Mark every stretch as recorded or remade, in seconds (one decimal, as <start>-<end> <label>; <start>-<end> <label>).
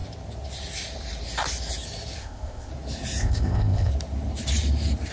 0.0-2.2 recorded; 2.2-2.7 remade; 2.7-3.2 recorded; 3.2-3.9 remade; 3.9-5.1 recorded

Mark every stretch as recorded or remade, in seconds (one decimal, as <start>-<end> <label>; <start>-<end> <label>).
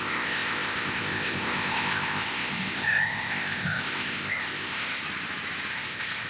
0.0-5.0 remade; 5.0-5.7 recorded; 5.7-6.3 remade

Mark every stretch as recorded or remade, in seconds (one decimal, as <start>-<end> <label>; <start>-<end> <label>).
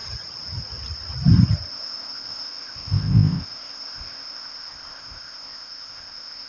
0.0-1.7 recorded; 1.7-6.5 remade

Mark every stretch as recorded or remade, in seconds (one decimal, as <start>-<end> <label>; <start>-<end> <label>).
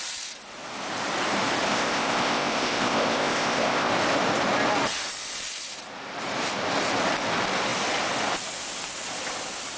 0.0-1.7 recorded; 1.7-3.9 remade; 3.9-9.8 recorded